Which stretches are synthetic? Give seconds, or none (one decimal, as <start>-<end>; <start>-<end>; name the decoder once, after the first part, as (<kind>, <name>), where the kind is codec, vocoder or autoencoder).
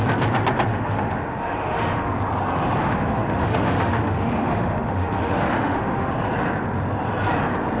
0.7-2.1 (autoencoder, DAC-VAE); 2.8-6.1